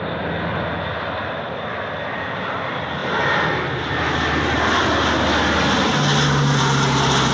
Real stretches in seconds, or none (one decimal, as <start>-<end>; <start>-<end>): 0.0-7.3